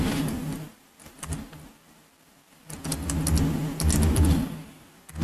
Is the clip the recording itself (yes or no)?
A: yes